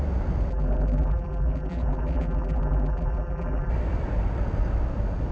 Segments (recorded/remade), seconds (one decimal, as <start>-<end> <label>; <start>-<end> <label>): 0.0-0.5 recorded; 0.5-3.7 remade; 3.7-5.3 recorded